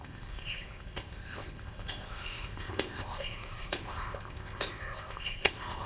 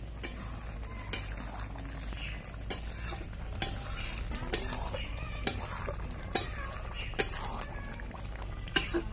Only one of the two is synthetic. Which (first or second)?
first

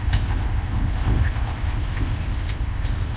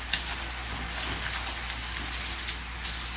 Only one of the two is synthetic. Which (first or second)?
first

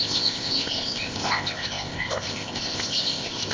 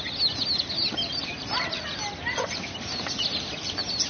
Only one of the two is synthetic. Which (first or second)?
first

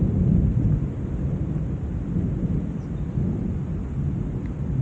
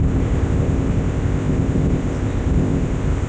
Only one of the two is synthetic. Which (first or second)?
second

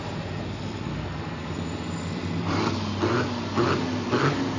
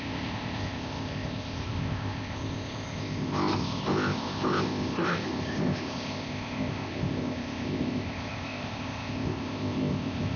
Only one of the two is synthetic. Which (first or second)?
second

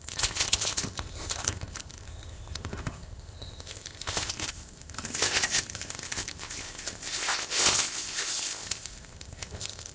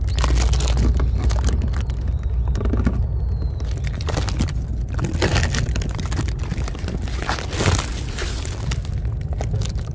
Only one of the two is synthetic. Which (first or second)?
first